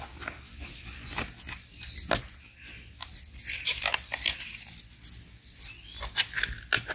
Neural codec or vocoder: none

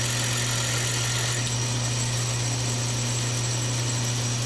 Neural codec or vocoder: none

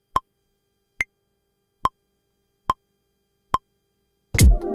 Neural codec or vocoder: none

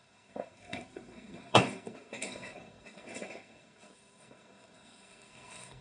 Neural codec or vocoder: codec, SNAC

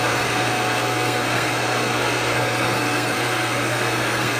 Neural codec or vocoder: codec, SNAC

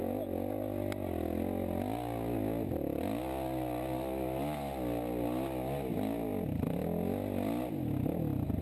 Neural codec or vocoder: none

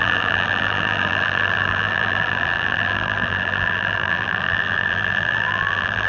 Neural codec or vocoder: vocoder, BigVGAN v2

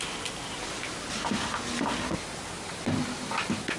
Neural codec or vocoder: none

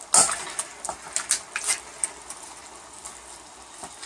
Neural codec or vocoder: none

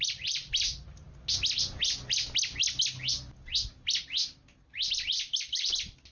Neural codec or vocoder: none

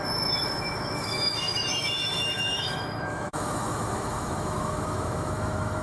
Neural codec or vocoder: autoencoder, DAC-VAE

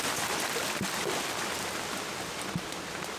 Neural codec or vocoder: none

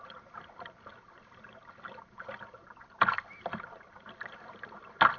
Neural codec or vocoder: none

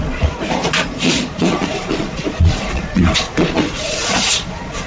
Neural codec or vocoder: vocoder, Vocos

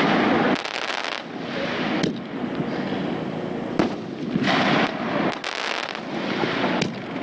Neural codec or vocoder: none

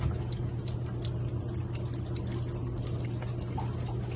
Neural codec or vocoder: none